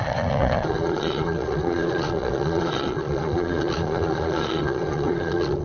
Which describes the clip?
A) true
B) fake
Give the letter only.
B